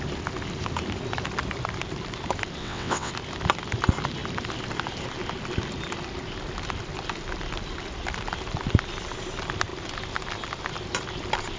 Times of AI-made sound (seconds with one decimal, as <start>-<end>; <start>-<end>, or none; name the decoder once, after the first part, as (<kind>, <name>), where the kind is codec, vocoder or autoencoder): 2.6-3.1 (vocoder, WaveNeXt)